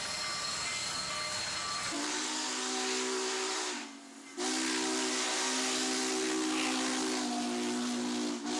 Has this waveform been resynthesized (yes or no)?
no